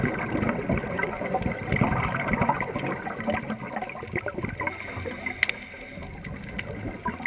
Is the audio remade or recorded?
recorded